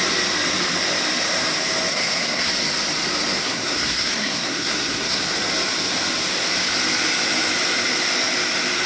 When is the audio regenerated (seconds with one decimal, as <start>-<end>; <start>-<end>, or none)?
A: 1.9-2.5; 3.4-5.2